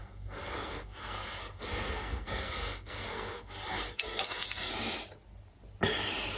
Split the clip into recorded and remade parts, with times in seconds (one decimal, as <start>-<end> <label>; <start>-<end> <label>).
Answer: 0.0-4.7 remade; 4.7-6.4 recorded